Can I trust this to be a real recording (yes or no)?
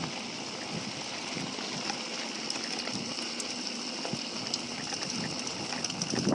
yes